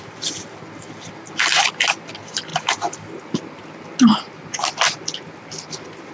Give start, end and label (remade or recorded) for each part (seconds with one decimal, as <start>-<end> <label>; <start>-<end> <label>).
0.0-6.1 recorded

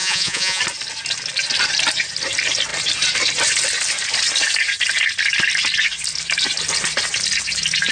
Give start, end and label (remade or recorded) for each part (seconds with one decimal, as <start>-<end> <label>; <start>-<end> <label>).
0.0-0.6 remade; 0.6-7.9 recorded